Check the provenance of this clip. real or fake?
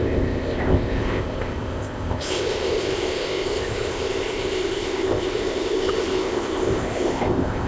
fake